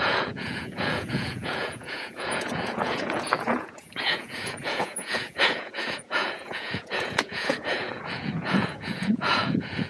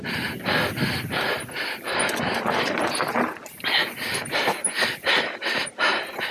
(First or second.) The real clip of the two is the second